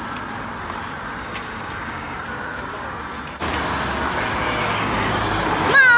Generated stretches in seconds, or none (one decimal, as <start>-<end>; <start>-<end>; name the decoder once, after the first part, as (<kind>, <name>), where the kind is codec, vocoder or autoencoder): 1.2-2.2 (codec, DAC); 4.6-5.1